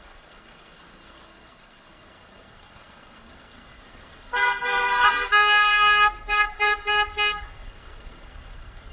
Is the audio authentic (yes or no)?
no